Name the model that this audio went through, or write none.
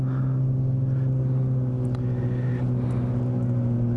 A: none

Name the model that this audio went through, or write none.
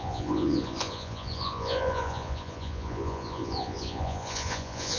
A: vocoder, Vocos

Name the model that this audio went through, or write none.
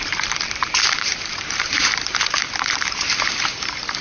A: vocoder, BigVGAN v2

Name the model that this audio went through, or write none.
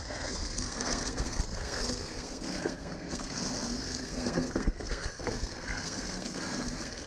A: codec, SNAC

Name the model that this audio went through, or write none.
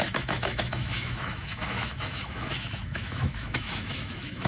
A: autoencoder, DAC-VAE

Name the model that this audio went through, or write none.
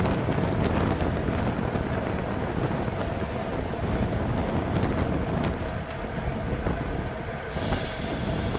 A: none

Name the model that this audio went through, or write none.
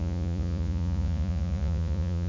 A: vocoder, Vocos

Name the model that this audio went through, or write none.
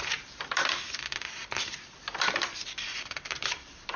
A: vocoder, BigVGAN v2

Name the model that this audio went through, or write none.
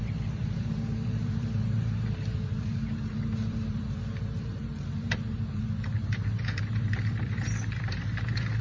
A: vocoder, BigVGAN v2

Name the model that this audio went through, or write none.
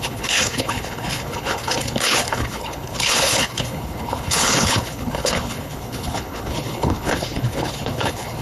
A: codec, HILCodec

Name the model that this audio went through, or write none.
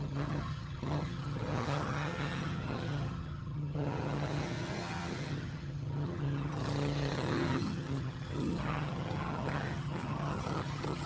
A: vocoder, HiFi-GAN